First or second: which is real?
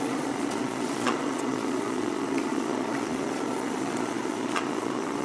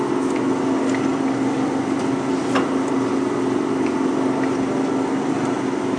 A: second